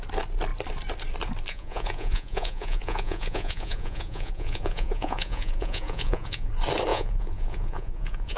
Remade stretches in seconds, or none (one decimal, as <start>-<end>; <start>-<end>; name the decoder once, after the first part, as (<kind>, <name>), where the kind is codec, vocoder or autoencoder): 1.5-6.5 (vocoder, Vocos); 6.9-8.4